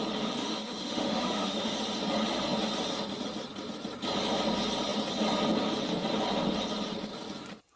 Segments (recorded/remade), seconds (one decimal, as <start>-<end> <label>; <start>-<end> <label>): 0.0-0.4 recorded; 0.4-1.7 remade; 1.7-7.8 recorded